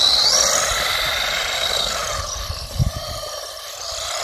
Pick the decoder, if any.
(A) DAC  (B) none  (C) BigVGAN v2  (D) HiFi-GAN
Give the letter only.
C